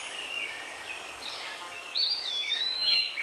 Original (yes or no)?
no